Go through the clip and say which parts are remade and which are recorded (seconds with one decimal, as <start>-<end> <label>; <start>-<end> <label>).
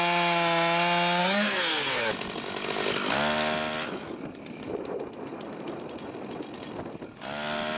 0.0-1.2 recorded; 1.2-2.0 remade; 2.0-7.8 recorded